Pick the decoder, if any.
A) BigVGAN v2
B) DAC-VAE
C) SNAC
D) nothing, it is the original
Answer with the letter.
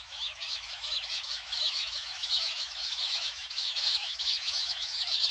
B